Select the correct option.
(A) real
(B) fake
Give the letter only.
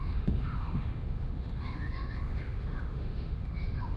B